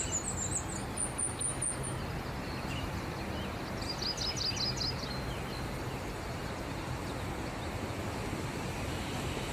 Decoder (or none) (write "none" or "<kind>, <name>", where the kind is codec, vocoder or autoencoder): none